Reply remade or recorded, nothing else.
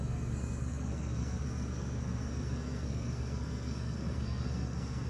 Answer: remade